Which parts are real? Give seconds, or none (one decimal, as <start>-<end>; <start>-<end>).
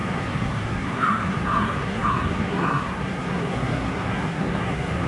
none